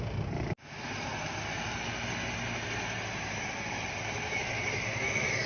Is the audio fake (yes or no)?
no